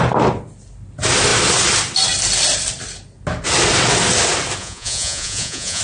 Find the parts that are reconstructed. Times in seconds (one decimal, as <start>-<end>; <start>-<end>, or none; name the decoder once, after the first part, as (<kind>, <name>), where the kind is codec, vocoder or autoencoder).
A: 4.6-5.8 (vocoder, Vocos)